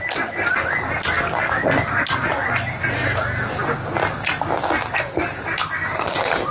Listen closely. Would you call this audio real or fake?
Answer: real